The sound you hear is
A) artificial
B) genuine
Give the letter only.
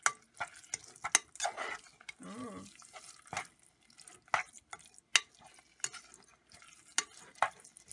B